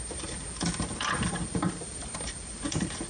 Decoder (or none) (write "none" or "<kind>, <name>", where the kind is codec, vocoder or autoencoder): vocoder, BigVGAN v2